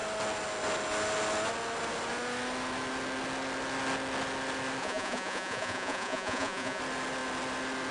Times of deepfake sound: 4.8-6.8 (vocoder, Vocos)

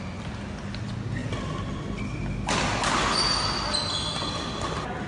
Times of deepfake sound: none

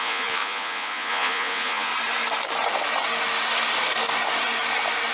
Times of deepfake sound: 0.0-1.9 (vocoder, Vocos)

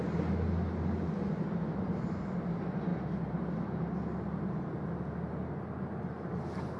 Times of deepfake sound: none

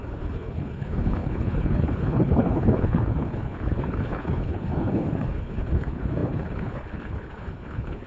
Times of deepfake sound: 0.0-8.1 (codec, HILCodec)

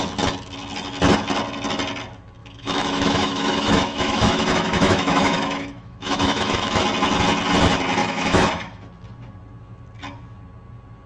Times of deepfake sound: 2.4-6.8 (autoencoder, DAC-VAE); 8.0-8.8